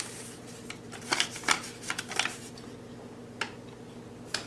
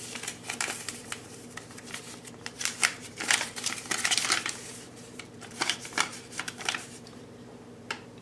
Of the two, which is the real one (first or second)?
first